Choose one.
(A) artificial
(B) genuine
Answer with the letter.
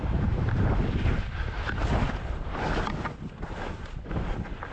A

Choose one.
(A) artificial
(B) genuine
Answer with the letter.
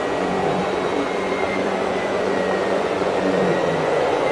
A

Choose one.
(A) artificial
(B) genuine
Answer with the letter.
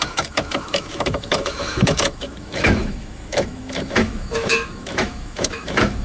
A